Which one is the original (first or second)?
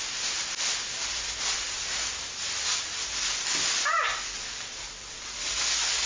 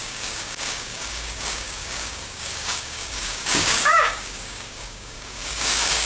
first